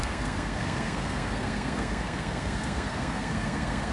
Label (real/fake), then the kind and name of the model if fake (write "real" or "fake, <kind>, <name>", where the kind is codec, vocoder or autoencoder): fake, codec, SNAC